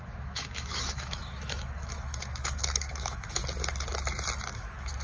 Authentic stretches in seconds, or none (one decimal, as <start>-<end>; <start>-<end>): 3.4-4.5